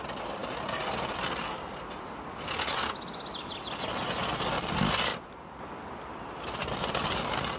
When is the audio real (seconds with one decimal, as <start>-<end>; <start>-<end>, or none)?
0.0-5.1; 5.6-7.6